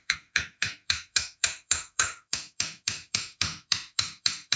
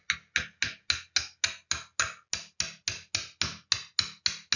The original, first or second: second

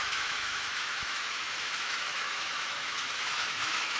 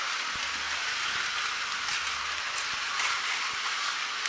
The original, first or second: second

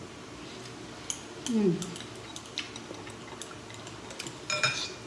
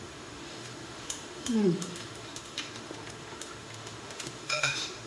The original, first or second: first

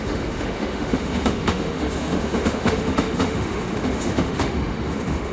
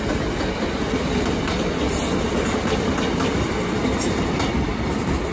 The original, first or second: second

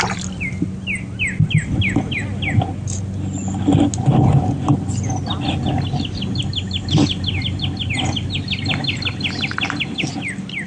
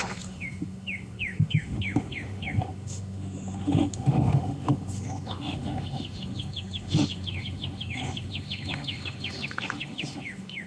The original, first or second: first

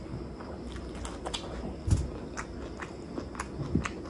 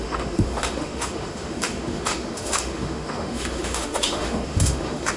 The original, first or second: first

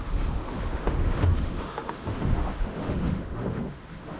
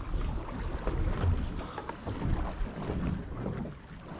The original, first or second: second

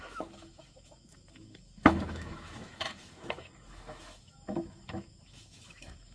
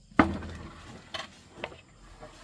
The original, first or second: second